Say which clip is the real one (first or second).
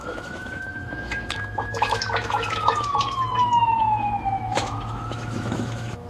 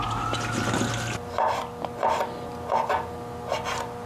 second